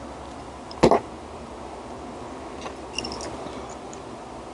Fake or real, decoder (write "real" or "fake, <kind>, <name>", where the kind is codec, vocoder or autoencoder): real